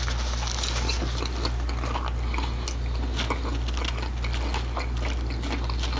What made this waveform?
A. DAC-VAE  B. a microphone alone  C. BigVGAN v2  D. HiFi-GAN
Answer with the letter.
B